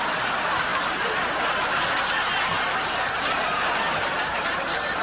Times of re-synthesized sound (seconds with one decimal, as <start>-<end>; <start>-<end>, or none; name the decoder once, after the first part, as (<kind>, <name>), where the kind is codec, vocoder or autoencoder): none